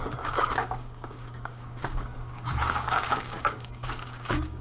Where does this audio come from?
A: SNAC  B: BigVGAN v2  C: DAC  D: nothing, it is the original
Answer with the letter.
C